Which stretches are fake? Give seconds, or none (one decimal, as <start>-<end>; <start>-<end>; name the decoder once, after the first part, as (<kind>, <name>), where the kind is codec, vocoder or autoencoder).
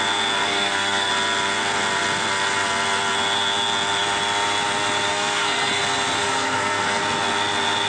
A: 0.4-1.1 (codec, SNAC); 5.1-5.7; 6.2-7.0